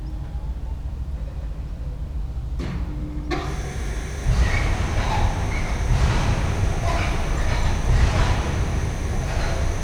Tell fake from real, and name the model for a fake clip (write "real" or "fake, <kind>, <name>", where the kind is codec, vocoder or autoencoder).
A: real